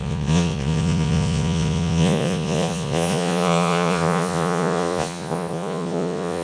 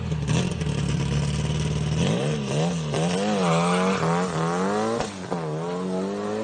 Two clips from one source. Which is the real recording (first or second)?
second